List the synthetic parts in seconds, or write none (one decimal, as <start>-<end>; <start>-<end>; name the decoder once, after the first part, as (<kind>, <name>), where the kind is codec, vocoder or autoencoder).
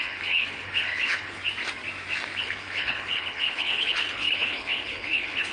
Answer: 0.0-1.4 (codec, HILCodec); 2.4-5.5